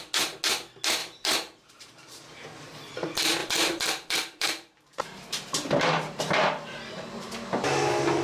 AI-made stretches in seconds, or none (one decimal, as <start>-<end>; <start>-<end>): 1.0-2.9; 3.4-6.2

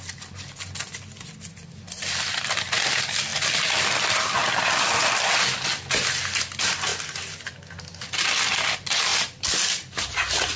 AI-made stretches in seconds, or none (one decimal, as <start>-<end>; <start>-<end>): none